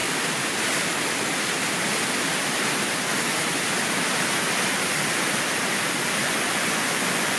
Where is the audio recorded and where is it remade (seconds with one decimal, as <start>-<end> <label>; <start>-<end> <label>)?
0.0-6.2 recorded; 6.2-7.4 remade